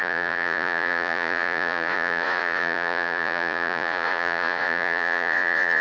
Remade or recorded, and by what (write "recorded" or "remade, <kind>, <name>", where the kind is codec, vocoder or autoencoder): remade, vocoder, Vocos